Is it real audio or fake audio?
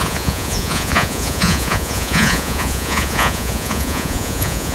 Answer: fake